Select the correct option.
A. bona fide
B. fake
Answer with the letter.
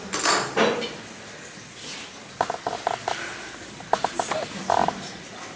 A